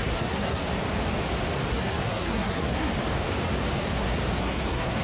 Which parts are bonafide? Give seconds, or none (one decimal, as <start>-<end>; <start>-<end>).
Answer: 0.6-1.7; 2.9-4.4